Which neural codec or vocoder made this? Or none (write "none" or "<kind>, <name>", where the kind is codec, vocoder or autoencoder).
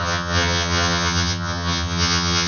vocoder, HiFi-GAN